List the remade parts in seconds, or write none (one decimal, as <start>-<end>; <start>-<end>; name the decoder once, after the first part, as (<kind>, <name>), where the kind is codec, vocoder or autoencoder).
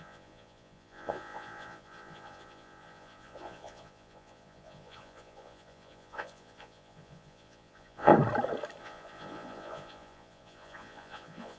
0.0-8.1 (vocoder, Vocos); 8.8-11.6